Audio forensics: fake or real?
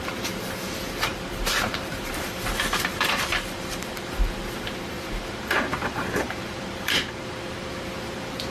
fake